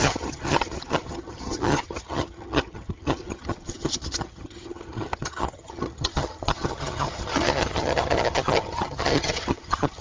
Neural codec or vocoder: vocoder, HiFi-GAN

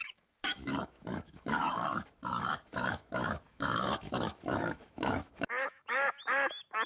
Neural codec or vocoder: autoencoder, DAC-VAE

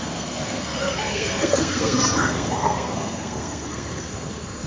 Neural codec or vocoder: codec, SNAC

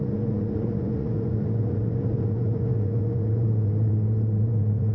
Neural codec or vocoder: vocoder, Vocos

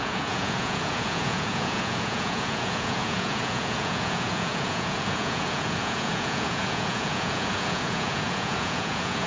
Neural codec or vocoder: vocoder, Vocos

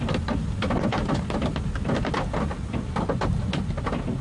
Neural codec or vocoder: none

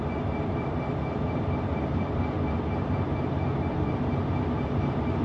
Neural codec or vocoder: none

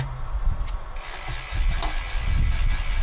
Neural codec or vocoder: none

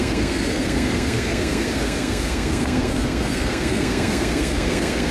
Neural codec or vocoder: codec, SNAC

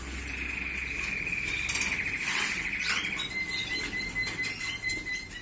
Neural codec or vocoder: none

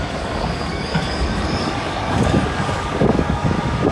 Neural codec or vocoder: codec, DAC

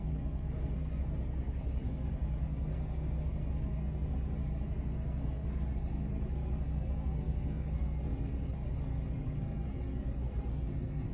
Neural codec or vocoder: codec, SNAC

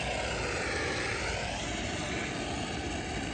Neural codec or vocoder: none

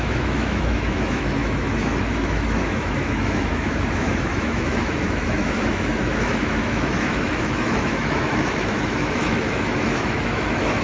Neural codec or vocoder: autoencoder, DAC-VAE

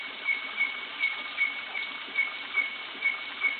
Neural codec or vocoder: none